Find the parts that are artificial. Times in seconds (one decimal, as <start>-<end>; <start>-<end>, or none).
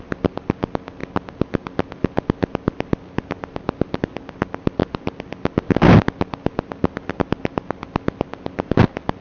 none